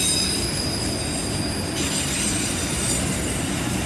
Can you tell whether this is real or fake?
real